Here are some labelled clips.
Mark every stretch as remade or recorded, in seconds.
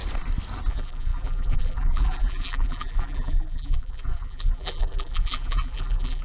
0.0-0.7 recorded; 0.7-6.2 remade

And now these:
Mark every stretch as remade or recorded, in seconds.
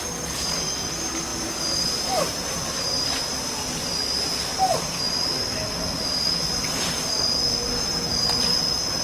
0.0-1.3 recorded; 1.3-3.6 remade; 3.6-4.5 recorded; 4.5-5.0 remade; 5.0-9.0 recorded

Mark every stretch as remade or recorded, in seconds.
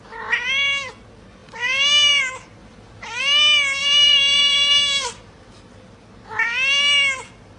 0.0-1.4 recorded; 1.4-2.2 remade; 2.2-2.6 recorded; 2.6-3.2 remade; 3.2-3.8 recorded; 3.8-5.9 remade; 5.9-7.6 recorded